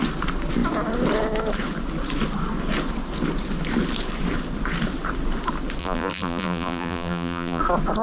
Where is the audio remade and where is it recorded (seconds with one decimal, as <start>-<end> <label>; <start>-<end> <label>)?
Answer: 0.0-5.8 recorded; 5.8-7.6 remade; 7.6-8.0 recorded